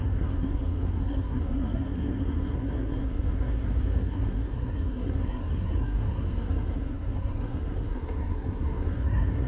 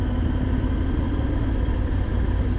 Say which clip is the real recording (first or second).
second